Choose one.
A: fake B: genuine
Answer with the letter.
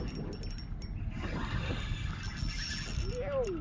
B